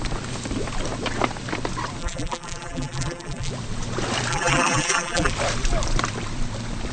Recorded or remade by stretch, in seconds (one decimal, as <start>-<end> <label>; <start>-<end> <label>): 0.0-2.0 recorded; 2.0-3.5 remade; 3.5-4.3 recorded; 4.3-5.3 remade; 5.3-6.9 recorded